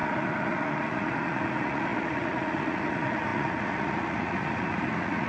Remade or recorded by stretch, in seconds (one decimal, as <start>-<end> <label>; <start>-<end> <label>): 0.0-5.3 remade